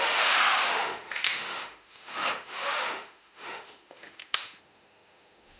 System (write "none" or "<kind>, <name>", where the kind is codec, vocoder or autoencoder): autoencoder, DAC-VAE